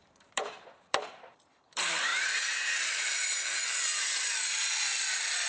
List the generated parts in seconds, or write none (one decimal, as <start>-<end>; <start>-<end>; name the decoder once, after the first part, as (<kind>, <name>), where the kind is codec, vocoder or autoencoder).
0.0-5.5 (vocoder, BigVGAN v2)